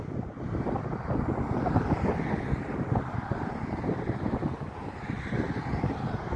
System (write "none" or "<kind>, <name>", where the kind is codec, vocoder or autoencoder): none